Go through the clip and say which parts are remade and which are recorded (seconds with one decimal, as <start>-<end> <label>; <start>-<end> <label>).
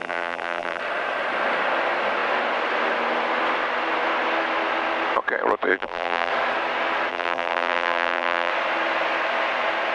0.0-0.8 remade; 0.8-5.7 recorded; 5.7-6.3 remade; 6.3-7.1 recorded; 7.1-8.5 remade; 8.5-9.9 recorded